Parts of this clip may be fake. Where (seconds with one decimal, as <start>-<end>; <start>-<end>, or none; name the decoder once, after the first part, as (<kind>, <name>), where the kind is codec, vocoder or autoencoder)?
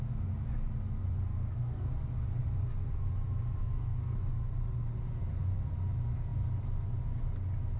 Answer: 1.3-1.9 (codec, SNAC); 3.6-4.2